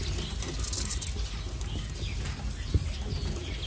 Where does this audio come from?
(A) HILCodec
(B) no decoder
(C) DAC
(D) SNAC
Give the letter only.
B